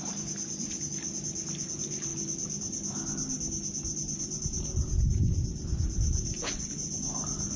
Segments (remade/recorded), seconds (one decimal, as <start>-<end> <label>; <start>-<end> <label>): 0.0-7.6 recorded